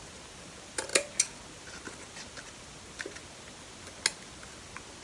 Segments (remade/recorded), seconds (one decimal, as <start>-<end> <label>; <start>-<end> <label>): 0.0-5.0 recorded